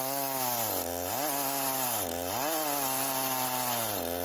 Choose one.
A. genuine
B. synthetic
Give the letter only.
A